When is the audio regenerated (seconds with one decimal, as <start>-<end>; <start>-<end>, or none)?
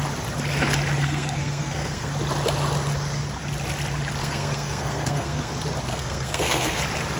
1.0-2.1; 4.2-5.5; 5.9-6.8